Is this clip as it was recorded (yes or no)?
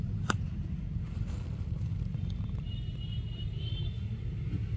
yes